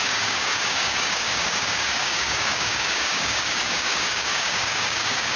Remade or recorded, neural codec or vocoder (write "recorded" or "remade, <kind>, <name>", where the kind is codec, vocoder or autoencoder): remade, codec, DAC